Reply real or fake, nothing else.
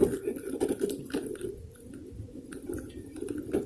real